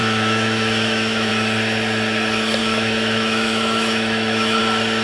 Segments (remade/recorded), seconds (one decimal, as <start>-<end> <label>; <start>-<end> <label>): 0.0-1.3 remade; 1.3-2.6 recorded; 2.6-4.6 remade; 4.6-5.0 recorded